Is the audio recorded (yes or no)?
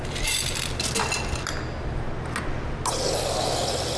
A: yes